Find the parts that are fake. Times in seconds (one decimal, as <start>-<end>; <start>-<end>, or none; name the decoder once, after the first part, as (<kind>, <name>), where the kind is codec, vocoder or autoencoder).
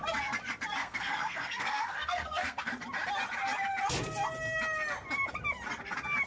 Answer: 0.8-2.7 (codec, SNAC)